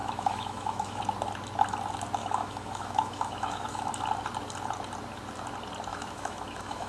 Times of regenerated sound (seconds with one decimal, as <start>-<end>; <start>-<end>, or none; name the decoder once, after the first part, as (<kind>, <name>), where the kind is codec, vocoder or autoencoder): 0.0-1.0 (autoencoder, DAC-VAE); 2.2-3.9; 5.9-6.9